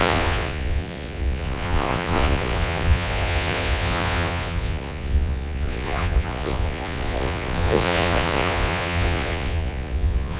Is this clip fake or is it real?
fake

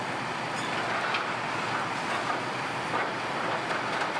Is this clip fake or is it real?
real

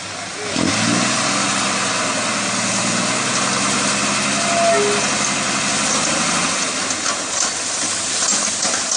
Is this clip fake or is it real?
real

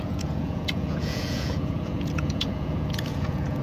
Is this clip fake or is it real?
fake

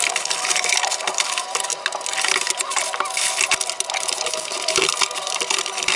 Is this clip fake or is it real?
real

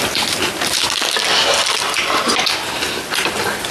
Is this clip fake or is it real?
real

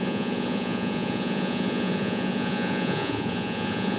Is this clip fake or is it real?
fake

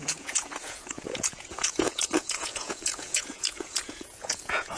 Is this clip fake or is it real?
fake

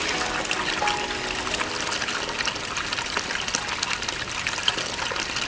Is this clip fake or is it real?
real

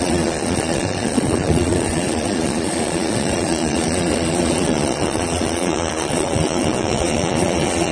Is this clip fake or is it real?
fake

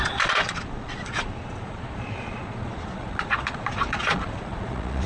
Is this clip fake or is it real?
fake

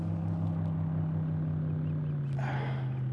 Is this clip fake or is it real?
real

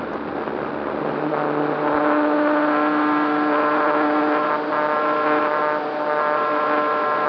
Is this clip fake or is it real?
real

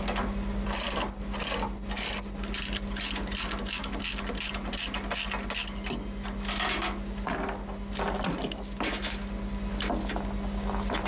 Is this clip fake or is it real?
real